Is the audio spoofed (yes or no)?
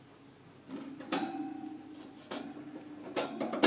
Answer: no